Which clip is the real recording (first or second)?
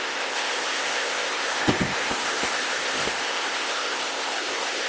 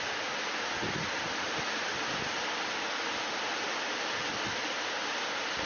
second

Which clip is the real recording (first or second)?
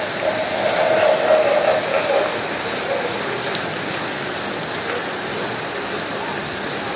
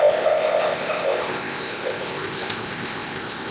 first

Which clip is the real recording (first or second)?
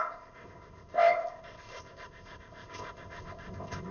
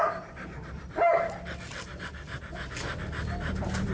second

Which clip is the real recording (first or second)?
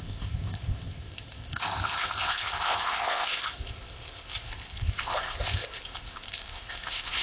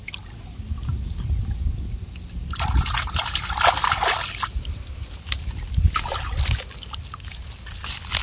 second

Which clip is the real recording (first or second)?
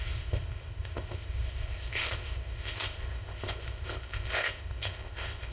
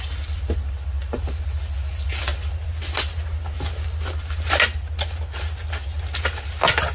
second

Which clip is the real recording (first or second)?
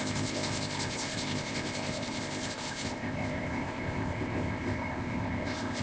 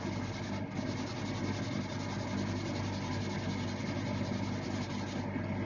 second